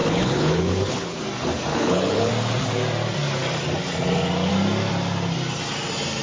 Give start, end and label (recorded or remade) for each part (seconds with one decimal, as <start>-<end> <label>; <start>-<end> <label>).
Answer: 0.0-1.2 remade; 1.2-1.7 recorded; 1.7-2.3 remade; 2.3-6.2 recorded